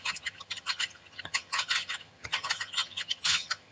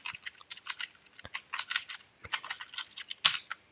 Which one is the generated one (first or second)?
first